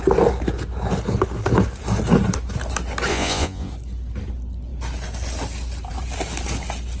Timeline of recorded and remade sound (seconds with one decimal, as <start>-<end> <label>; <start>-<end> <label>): 0.0-3.1 recorded; 3.1-3.7 remade; 3.7-7.0 recorded